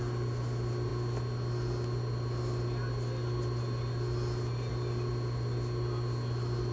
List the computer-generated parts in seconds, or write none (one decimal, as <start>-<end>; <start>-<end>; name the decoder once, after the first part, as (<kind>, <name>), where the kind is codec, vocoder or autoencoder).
none